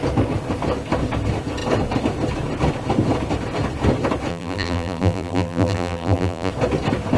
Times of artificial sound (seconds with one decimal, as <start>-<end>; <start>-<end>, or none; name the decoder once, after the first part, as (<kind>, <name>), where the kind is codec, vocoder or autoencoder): 4.3-6.5 (vocoder, BigVGAN v2)